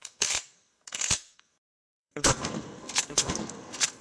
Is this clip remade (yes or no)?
yes